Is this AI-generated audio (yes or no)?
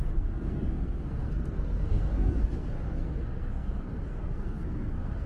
yes